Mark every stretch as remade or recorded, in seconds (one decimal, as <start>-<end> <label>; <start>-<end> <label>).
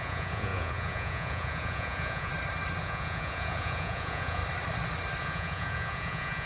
0.0-2.3 remade; 2.3-2.8 recorded; 2.8-4.4 remade; 4.4-5.2 recorded; 5.2-6.5 remade